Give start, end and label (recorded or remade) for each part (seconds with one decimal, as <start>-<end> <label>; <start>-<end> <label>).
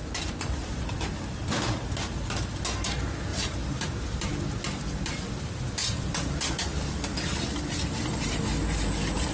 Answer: 0.0-0.8 remade; 0.8-3.3 recorded; 3.3-4.2 remade; 4.2-5.8 recorded; 5.8-6.7 remade; 6.7-9.3 recorded